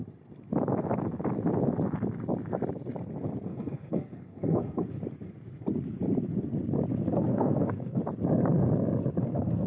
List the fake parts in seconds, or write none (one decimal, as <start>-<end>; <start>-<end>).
3.5-5.0; 7.1-8.0; 9.2-9.7